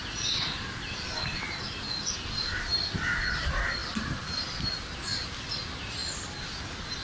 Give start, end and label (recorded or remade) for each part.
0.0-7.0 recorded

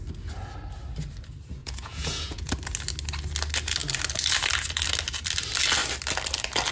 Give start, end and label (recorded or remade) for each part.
0.0-1.6 recorded; 1.6-2.5 remade; 2.5-6.7 recorded

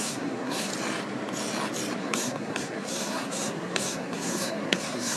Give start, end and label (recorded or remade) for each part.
0.0-0.7 remade; 0.7-2.0 recorded; 2.0-5.2 remade

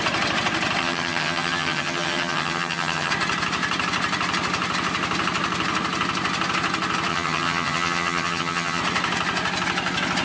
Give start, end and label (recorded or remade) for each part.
0.0-0.8 recorded; 0.8-3.1 remade; 3.1-7.1 recorded; 7.1-8.8 remade; 8.8-10.2 recorded